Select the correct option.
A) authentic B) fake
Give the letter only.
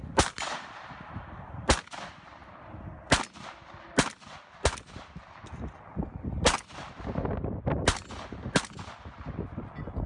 A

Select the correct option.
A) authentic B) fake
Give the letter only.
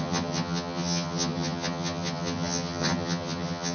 B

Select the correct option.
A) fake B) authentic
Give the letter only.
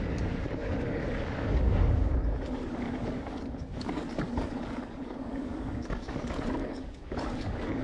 A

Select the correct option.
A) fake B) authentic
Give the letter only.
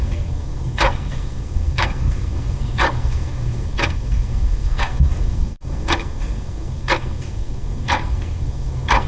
A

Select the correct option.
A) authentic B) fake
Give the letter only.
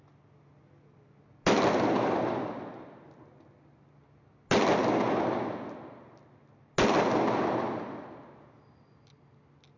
A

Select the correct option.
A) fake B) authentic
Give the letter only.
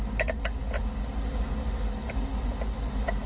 B